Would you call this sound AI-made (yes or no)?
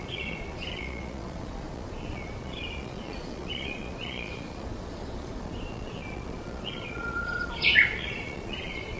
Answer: yes